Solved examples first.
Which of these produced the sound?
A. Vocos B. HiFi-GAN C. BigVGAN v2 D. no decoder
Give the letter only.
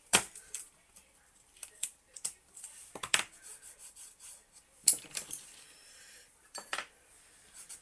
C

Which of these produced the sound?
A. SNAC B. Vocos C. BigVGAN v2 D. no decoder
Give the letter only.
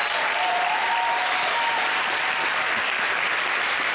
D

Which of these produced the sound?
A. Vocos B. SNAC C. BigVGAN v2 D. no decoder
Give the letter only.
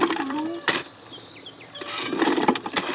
C